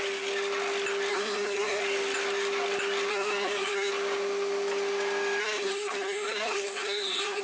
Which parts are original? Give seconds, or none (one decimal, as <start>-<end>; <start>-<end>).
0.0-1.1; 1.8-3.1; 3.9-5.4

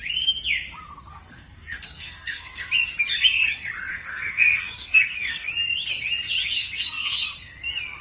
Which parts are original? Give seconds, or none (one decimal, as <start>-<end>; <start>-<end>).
0.0-1.1; 2.6-3.9; 5.5-6.6; 7.6-8.0

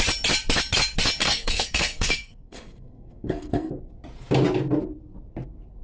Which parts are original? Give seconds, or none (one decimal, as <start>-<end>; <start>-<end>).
0.0-1.2; 3.7-5.8

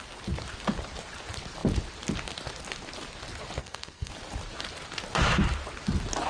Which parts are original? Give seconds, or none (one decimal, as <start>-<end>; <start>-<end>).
0.0-3.6; 4.1-6.3

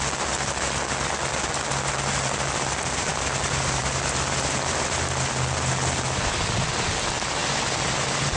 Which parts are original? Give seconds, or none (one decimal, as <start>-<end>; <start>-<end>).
0.0-8.4